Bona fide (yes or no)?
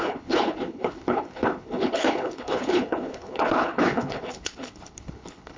no